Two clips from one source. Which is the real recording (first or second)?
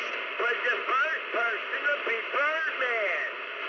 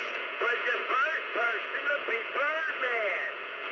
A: first